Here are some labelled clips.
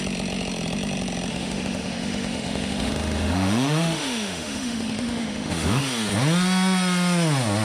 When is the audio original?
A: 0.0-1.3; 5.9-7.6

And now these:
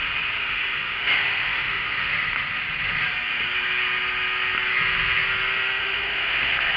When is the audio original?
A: 0.0-0.4; 2.1-5.8

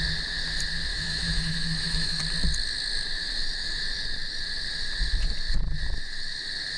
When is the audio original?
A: 0.0-0.9; 2.2-6.8

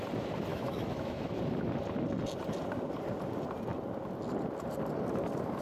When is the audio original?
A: 0.0-0.5; 1.4-5.6

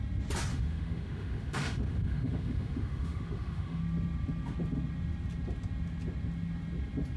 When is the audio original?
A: 0.0-0.5; 3.8-7.2

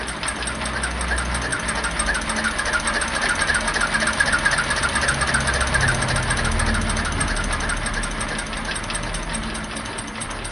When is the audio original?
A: 0.0-10.5

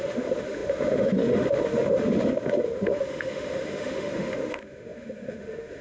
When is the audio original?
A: none